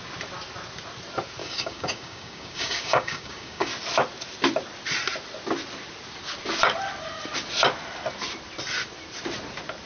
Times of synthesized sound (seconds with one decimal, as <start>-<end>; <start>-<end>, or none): 1.4-3.7